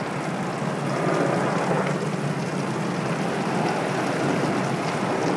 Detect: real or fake real